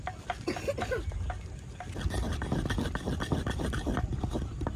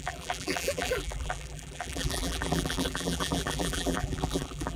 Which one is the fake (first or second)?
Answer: second